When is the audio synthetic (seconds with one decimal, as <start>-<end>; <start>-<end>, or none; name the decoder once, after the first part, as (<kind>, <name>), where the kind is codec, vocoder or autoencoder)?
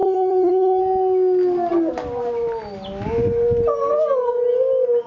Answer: 0.0-0.8 (codec, SNAC)